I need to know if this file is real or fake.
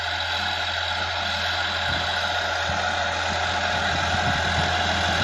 real